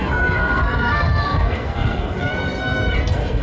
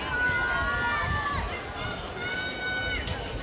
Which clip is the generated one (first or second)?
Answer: first